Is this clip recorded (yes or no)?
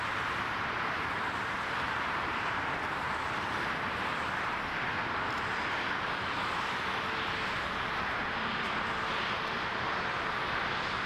yes